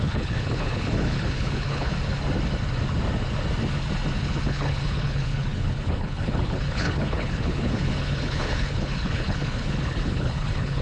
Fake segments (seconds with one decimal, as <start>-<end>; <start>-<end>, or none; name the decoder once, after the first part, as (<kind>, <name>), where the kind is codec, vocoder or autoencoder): 0.0-1.9 (codec, HILCodec); 4.2-10.8